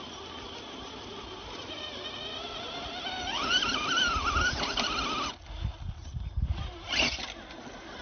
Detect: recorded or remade recorded